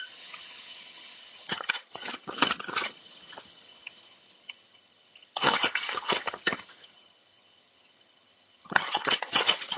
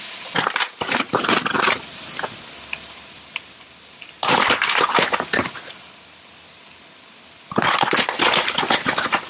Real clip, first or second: second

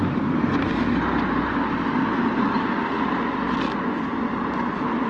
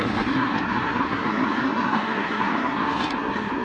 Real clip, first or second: first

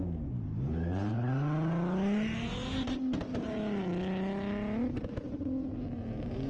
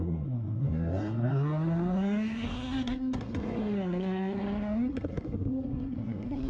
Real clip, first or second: first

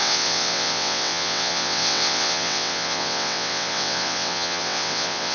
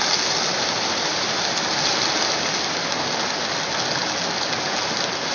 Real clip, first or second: second